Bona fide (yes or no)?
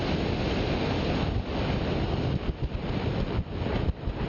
yes